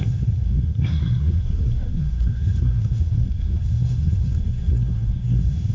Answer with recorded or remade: remade